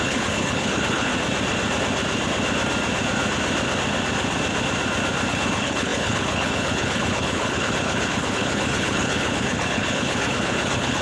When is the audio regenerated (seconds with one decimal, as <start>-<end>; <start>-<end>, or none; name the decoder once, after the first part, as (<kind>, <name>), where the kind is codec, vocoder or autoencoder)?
0.0-1.1 (codec, HILCodec); 5.3-11.0

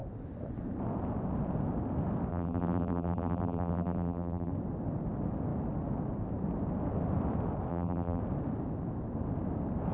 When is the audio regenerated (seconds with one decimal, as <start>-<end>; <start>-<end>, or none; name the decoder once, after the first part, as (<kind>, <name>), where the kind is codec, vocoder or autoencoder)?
2.3-4.5 (vocoder, BigVGAN v2); 7.7-8.2